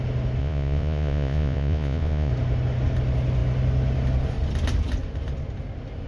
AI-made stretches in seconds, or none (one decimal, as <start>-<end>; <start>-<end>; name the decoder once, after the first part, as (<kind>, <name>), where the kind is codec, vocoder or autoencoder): 0.4-2.3 (vocoder, Vocos)